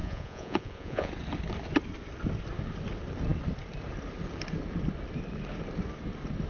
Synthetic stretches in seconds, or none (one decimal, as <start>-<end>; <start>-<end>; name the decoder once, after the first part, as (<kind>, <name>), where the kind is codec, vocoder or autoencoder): 0.0-1.1 (vocoder, Vocos)